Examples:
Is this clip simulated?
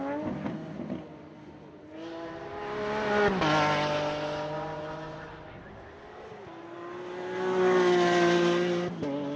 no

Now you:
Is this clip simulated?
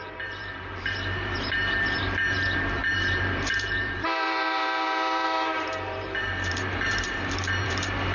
yes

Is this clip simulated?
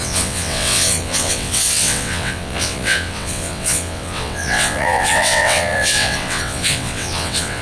yes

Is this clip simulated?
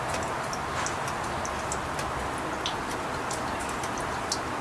no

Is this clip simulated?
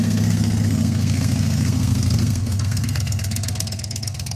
yes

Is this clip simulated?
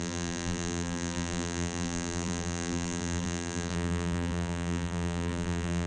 yes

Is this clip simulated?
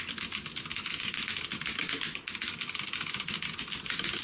no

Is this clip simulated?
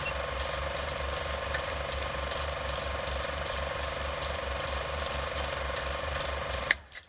yes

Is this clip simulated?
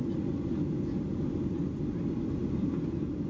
no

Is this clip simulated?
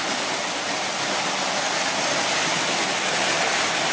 no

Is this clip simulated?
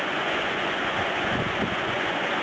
yes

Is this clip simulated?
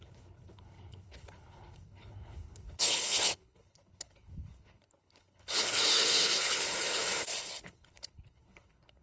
yes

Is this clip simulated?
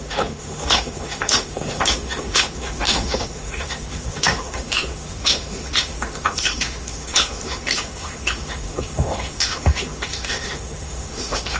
yes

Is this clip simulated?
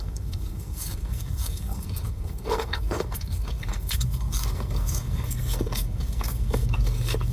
yes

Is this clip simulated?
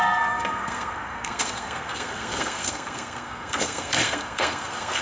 yes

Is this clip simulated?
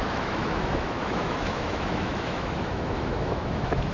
yes